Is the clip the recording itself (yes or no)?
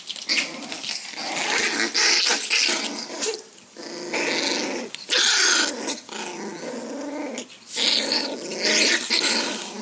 yes